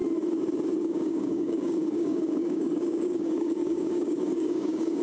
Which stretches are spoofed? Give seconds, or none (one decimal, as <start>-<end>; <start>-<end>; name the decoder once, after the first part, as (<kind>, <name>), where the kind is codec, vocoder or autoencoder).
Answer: 0.8-5.0 (codec, DAC)